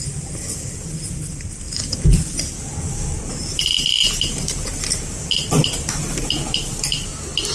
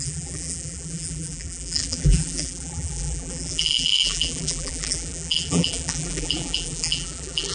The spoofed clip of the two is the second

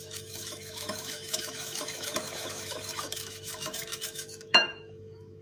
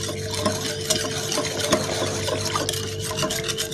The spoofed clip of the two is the first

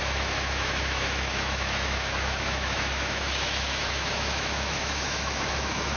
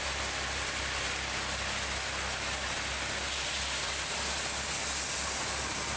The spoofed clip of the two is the first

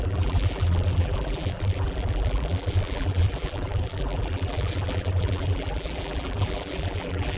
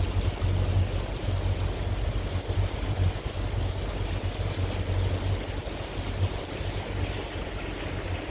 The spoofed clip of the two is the first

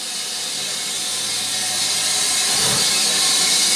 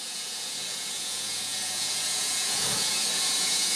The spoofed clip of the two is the second